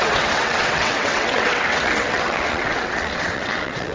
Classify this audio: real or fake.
fake